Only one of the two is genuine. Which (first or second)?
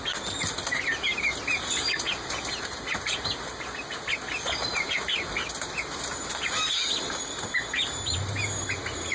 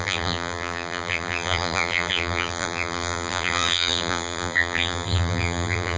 first